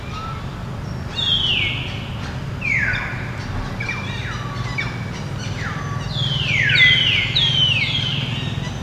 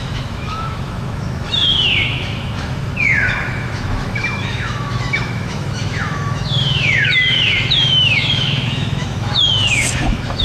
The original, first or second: first